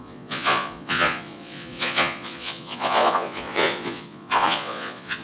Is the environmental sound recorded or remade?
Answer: remade